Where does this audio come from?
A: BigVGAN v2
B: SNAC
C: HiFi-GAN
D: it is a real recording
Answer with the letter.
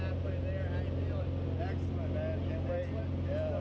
D